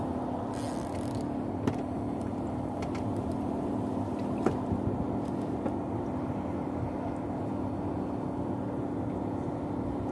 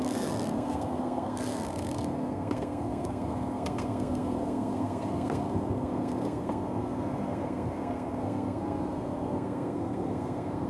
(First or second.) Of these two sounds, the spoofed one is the second